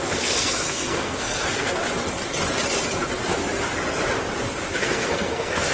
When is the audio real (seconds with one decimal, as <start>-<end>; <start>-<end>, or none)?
1.8-4.8